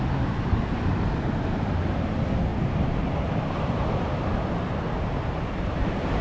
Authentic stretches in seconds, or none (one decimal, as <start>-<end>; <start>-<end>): 0.0-6.2